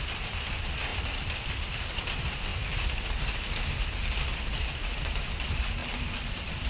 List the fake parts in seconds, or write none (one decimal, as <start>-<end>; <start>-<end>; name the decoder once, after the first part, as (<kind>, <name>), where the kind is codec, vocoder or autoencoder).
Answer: 0.9-1.5 (vocoder, BigVGAN v2); 5.8-6.7